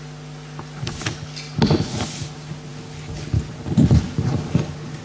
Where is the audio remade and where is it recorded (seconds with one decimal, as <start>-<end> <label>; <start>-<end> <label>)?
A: 0.0-5.0 recorded